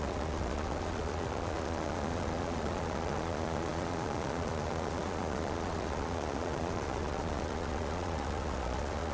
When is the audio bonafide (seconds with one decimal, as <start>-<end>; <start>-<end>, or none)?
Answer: none